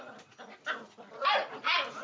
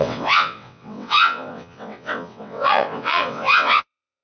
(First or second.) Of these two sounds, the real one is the first